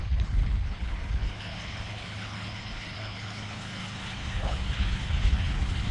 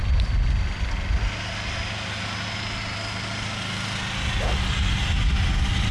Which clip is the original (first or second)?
second